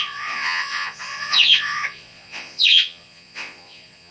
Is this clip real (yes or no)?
no